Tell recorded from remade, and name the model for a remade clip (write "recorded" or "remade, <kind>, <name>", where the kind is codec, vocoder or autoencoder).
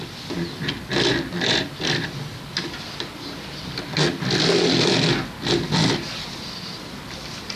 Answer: recorded